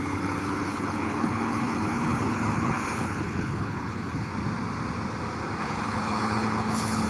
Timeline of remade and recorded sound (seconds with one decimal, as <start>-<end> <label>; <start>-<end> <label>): 0.0-4.3 remade; 4.3-5.6 recorded; 5.6-7.1 remade